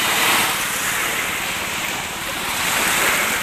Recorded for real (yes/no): yes